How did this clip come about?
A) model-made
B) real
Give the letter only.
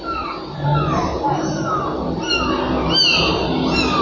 B